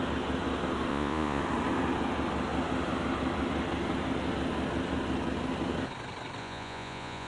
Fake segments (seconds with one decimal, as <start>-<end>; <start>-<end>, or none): 0.9-1.4; 6.4-7.3